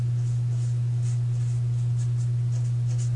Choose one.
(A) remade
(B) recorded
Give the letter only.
B